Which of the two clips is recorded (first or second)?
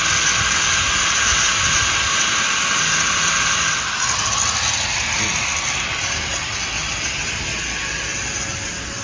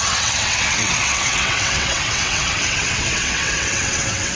first